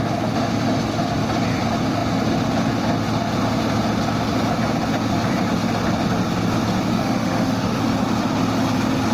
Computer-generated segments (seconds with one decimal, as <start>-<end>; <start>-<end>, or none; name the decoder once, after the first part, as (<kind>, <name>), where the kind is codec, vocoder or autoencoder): 6.9-7.8 (autoencoder, DAC-VAE)